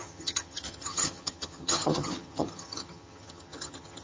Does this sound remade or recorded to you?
remade